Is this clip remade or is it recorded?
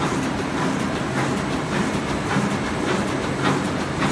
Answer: remade